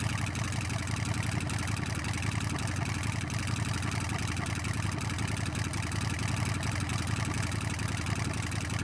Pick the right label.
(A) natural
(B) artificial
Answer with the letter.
A